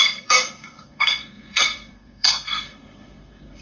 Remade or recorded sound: remade